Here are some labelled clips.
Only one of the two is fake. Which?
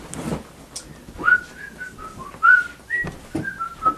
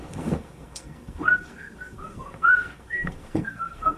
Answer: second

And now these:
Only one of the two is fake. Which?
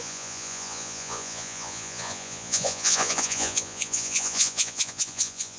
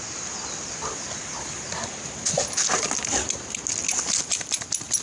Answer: first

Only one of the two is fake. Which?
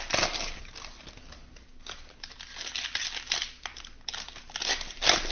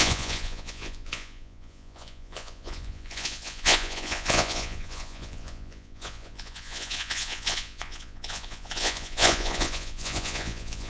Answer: second